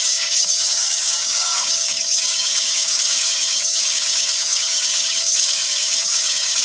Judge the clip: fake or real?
fake